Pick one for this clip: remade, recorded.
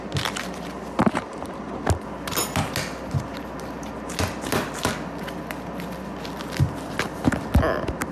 recorded